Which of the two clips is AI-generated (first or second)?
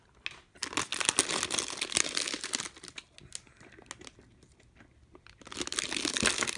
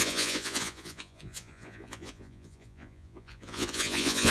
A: second